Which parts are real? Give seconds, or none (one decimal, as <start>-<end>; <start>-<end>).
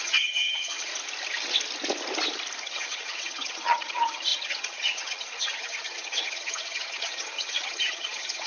0.9-2.6